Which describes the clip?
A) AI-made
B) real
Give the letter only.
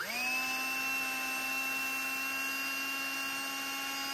B